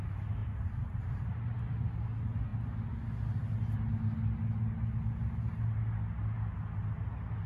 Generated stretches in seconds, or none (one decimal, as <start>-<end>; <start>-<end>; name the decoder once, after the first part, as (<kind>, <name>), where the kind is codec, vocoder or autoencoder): 0.4-1.6 (vocoder, BigVGAN v2)